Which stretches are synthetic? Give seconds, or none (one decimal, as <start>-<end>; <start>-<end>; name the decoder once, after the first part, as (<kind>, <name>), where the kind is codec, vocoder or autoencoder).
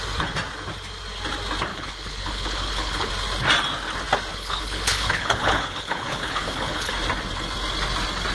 1.7-3.1 (codec, HILCodec); 4.3-6.9